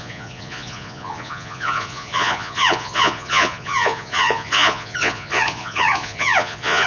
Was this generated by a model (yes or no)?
yes